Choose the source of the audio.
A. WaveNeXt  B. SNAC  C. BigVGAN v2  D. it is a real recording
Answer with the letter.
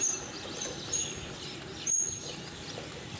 D